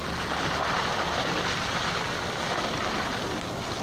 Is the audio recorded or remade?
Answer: recorded